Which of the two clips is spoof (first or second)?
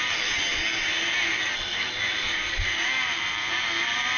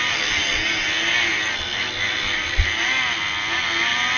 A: first